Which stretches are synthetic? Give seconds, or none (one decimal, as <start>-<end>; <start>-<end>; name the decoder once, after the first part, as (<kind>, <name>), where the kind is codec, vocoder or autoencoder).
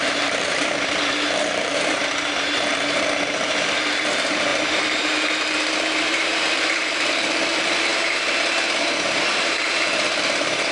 0.0-7.9 (vocoder, BigVGAN v2); 9.4-10.7